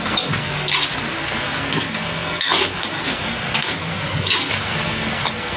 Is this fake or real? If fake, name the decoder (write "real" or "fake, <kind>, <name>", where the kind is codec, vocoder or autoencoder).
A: fake, codec, SNAC